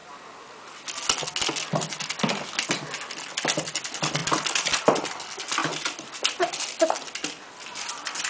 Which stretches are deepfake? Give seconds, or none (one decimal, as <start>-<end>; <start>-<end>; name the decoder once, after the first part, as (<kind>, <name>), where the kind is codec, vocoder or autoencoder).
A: 0.0-0.6 (vocoder, BigVGAN v2); 4.2-5.1; 5.6-6.6